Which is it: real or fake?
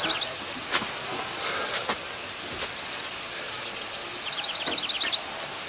real